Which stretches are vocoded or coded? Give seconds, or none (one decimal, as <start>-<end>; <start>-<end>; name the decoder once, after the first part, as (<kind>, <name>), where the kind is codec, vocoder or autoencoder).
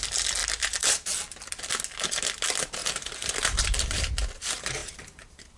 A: 0.4-1.5 (vocoder, BigVGAN v2); 2.8-4.1; 4.8-5.6